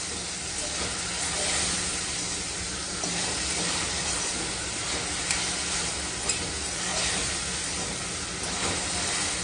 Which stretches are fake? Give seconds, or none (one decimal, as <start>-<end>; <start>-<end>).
2.8-3.8; 4.6-6.4